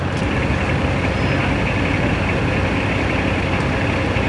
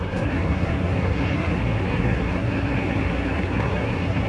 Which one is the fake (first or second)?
second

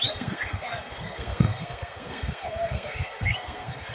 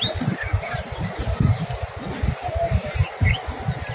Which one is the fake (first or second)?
first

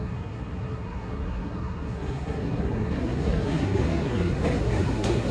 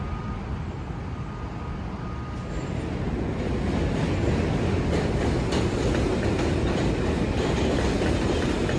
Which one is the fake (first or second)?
first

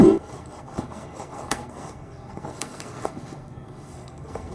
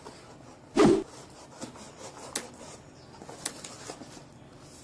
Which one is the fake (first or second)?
first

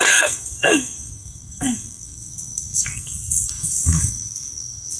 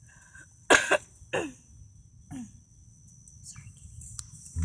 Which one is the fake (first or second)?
first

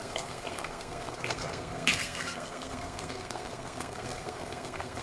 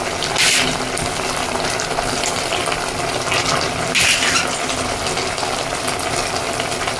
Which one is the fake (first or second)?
first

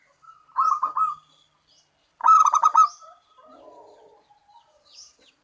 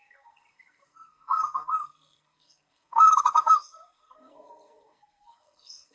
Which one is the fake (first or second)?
second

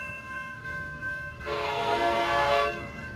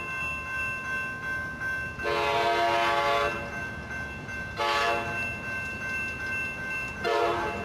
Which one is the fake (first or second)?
first